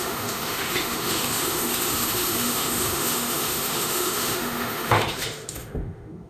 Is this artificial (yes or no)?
yes